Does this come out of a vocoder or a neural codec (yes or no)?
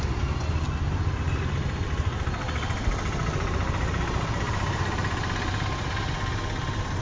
no